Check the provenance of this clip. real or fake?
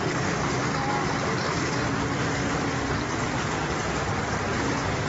real